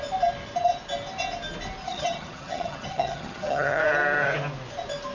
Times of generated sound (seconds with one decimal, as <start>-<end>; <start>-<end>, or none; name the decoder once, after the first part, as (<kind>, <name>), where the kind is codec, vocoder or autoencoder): 1.8-3.8 (vocoder, HiFi-GAN)